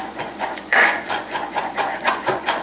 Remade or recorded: remade